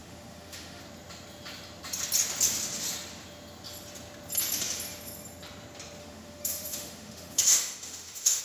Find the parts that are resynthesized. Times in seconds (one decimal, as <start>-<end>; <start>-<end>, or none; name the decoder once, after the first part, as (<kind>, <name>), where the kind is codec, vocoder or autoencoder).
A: 0.0-0.8 (autoencoder, DAC-VAE); 6.0-8.4